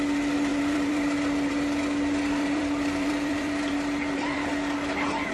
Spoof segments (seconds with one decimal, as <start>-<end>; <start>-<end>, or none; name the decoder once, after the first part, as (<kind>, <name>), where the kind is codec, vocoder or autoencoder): 0.5-1.5 (vocoder, BigVGAN v2); 2.4-4.5